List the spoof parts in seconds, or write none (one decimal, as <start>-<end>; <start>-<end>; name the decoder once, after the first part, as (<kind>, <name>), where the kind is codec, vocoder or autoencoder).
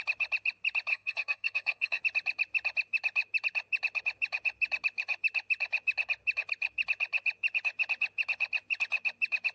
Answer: 0.9-2.0 (codec, SNAC)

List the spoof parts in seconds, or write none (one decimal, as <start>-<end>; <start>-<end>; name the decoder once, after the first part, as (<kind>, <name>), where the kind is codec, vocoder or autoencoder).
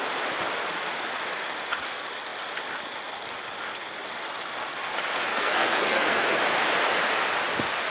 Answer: 5.3-6.4 (codec, SNAC)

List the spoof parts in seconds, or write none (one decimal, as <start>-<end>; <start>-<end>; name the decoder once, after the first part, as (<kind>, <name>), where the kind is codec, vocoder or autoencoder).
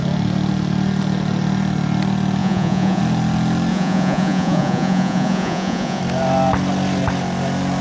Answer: 2.4-3.0 (vocoder, Vocos); 3.7-6.0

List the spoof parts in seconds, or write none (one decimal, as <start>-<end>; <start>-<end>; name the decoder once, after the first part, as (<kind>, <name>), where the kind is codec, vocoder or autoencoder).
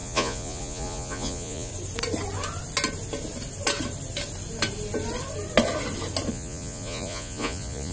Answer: 0.0-1.7 (vocoder, Vocos); 6.3-7.9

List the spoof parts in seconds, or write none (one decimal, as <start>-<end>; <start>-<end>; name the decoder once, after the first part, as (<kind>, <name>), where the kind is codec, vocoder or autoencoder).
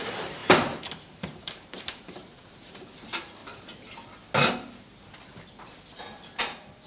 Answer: 0.0-3.4 (vocoder, BigVGAN v2); 6.4-6.9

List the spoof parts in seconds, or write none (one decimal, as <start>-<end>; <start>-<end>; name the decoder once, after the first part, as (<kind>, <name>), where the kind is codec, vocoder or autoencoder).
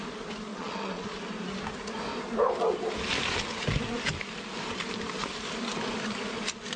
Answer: 0.5-1.2 (vocoder, Vocos)